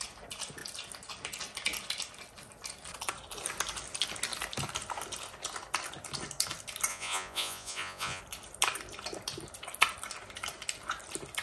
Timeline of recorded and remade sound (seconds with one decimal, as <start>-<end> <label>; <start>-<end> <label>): 0.0-6.9 recorded; 6.9-8.2 remade; 8.2-11.4 recorded